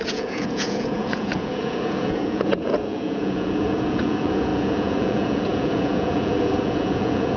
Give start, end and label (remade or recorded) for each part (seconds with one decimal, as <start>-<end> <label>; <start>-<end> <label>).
0.0-7.4 remade